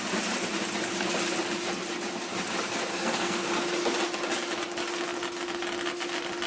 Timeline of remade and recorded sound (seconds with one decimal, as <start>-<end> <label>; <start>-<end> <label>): 0.0-2.9 recorded; 2.9-3.5 remade; 3.5-6.5 recorded